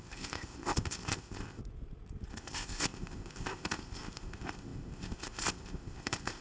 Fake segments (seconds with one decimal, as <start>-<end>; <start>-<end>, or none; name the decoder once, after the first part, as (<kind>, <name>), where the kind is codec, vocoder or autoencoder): 0.0-1.6 (codec, ZipCodec); 2.3-6.4